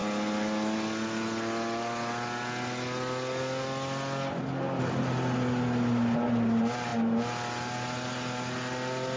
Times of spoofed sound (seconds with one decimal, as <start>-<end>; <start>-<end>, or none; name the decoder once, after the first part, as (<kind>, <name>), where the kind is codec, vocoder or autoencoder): none